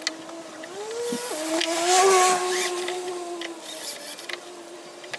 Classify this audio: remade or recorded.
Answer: recorded